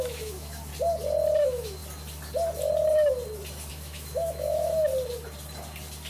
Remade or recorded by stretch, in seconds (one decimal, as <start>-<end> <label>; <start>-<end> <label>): 0.0-0.7 remade; 0.7-1.4 recorded; 1.4-1.8 remade; 1.8-3.7 recorded; 3.7-4.9 remade; 4.9-6.1 recorded